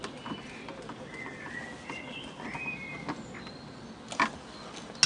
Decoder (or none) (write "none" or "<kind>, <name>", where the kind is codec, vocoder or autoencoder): none